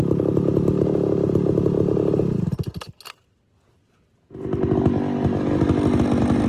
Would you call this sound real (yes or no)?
yes